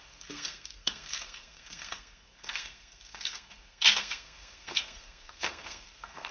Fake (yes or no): yes